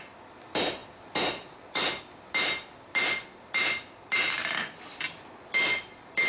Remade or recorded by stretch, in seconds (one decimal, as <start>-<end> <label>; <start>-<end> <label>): 0.0-6.3 recorded